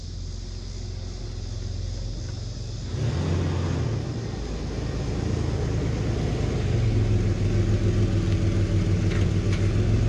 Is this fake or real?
real